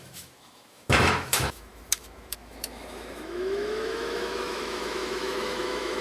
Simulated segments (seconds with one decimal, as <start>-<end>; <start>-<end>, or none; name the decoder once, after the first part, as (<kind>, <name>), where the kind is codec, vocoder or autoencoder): 0.0-6.0 (autoencoder, DAC-VAE)